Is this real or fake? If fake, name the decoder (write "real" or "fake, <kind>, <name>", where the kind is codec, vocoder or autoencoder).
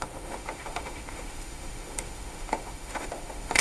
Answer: fake, autoencoder, DAC-VAE